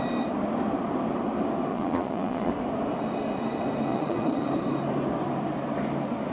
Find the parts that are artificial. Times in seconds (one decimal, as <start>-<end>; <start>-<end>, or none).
1.7-2.5; 3.9-4.5